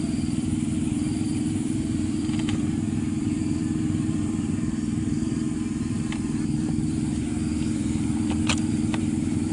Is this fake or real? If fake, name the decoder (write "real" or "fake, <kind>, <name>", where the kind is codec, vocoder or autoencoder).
fake, vocoder, BigVGAN v2